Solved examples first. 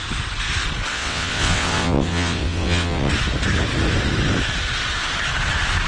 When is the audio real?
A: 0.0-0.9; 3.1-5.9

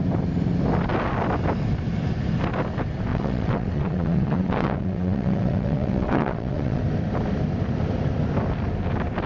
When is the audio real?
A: 0.0-3.1; 6.8-9.3

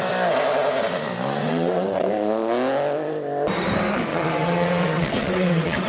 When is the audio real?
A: 0.0-1.4; 2.1-4.1

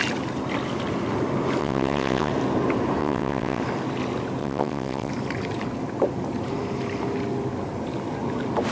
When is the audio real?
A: 0.0-1.6; 2.3-3.0; 3.6-4.4; 5.1-8.7

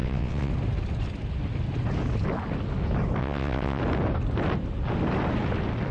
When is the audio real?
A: 0.5-3.2; 3.8-5.9

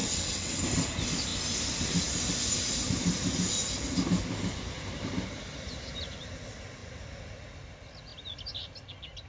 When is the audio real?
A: 0.5-9.3